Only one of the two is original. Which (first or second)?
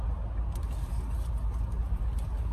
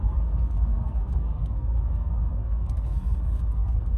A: first